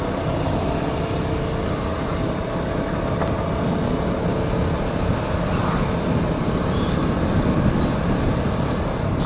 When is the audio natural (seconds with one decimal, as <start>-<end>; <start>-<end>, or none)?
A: 0.0-9.3